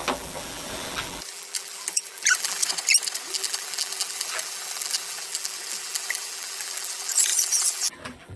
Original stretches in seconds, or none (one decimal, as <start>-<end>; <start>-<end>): 2.6-3.3